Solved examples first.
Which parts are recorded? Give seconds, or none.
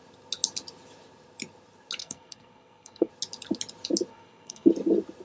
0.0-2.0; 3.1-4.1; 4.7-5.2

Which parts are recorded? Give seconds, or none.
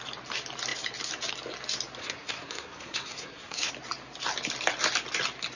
0.0-2.0; 3.7-5.6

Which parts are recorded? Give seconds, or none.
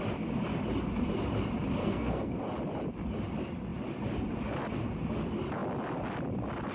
0.0-1.8; 2.4-6.7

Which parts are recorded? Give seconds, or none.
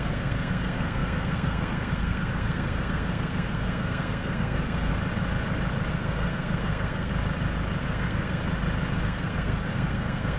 4.9-5.9; 7.1-7.8; 8.4-9.0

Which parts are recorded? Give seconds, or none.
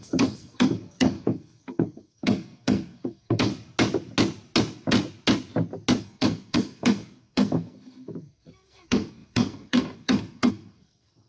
3.5-6.0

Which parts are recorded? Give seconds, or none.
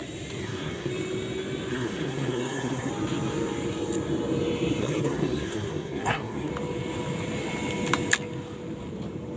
0.0-0.4; 0.9-1.7; 2.9-4.8; 6.5-9.4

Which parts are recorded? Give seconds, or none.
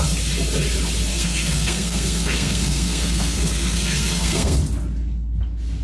0.0-1.1; 4.6-5.8